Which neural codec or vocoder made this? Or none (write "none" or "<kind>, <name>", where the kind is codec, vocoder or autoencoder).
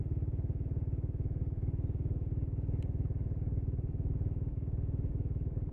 autoencoder, DAC-VAE